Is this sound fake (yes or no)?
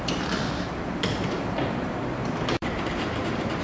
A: yes